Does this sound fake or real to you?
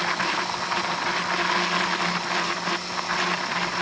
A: real